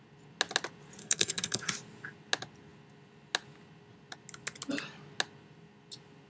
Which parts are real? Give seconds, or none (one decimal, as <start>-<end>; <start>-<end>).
0.0-1.0; 1.6-6.3